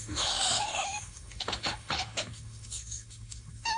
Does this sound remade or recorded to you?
remade